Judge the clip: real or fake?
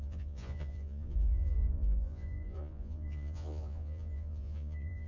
fake